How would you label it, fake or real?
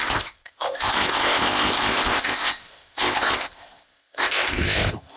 fake